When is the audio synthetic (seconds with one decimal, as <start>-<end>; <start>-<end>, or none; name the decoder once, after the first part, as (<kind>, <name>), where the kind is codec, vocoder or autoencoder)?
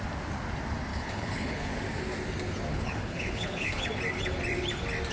0.9-1.7 (codec, HILCodec); 2.7-3.9